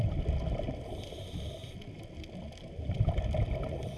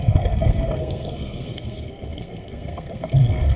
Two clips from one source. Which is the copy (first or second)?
second